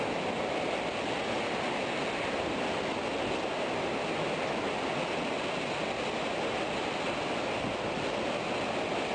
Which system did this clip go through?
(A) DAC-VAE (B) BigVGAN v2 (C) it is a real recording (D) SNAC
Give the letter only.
C